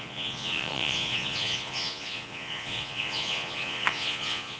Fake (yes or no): yes